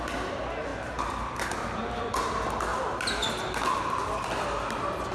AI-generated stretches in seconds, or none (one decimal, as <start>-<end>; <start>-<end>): none